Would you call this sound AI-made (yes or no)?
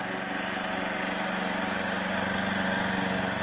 yes